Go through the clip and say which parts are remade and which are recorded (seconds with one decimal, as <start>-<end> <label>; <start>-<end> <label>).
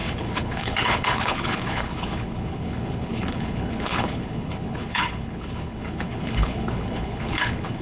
0.0-7.8 remade